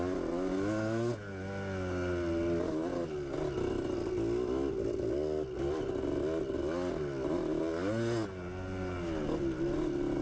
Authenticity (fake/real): real